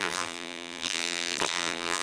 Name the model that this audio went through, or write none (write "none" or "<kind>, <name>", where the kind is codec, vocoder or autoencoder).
vocoder, BigVGAN v2